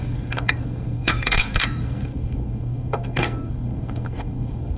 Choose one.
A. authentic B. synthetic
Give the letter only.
B